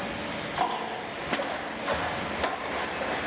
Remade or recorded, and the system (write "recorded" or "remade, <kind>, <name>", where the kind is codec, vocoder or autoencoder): recorded